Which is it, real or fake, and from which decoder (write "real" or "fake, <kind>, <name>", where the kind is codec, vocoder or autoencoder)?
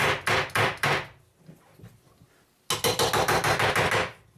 real